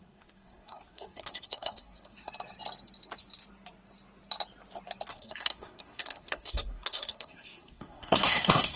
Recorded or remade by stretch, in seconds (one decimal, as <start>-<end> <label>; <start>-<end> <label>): 0.0-2.3 remade; 2.3-5.1 recorded; 5.1-8.8 remade